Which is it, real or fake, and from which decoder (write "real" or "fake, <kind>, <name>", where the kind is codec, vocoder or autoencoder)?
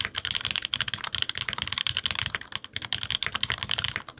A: real